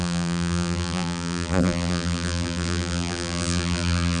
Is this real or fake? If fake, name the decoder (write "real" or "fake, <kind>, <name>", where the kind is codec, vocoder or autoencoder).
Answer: fake, vocoder, BigVGAN v2